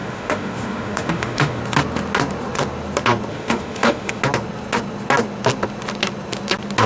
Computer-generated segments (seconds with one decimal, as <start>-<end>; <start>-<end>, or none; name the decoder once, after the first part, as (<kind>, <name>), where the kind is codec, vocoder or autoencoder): 0.0-1.6 (autoencoder, DAC-VAE); 3.3-4.2